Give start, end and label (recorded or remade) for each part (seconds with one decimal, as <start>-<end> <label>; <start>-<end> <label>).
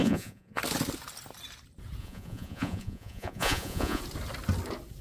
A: 0.0-0.6 remade; 0.6-2.0 recorded; 2.0-4.0 remade; 4.0-5.0 recorded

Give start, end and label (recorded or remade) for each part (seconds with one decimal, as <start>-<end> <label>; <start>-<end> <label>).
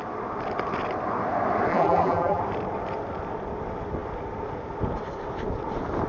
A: 0.0-1.7 recorded; 1.7-2.4 remade; 2.4-6.1 recorded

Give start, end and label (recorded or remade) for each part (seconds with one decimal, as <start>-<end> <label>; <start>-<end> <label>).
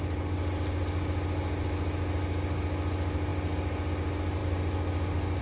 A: 0.0-5.4 recorded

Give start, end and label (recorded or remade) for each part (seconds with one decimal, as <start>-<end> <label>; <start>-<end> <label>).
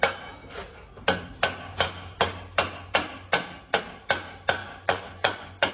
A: 0.0-4.6 recorded; 4.6-5.7 remade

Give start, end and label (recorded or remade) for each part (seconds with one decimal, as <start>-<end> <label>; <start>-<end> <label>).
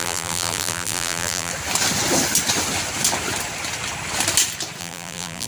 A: 0.0-1.5 remade; 1.5-4.8 recorded; 4.8-5.5 remade